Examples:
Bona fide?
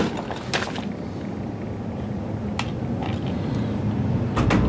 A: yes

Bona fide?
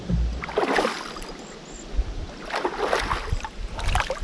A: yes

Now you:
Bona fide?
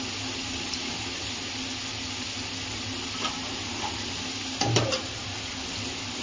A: yes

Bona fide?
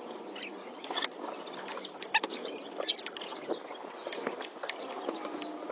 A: yes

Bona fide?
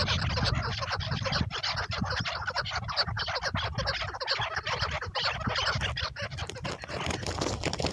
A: yes